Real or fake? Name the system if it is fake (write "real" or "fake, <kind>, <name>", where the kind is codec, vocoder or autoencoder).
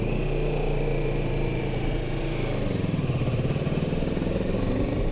fake, vocoder, BigVGAN v2